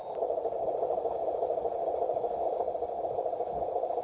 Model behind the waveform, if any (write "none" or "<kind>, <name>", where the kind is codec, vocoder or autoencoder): none